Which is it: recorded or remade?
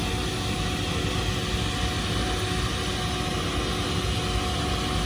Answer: recorded